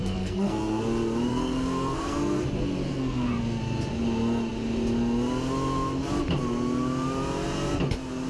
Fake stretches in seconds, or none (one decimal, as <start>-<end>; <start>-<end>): 0.0-0.8; 1.3-2.4; 2.9-3.6